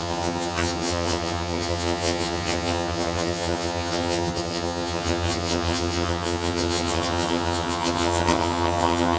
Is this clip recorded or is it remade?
remade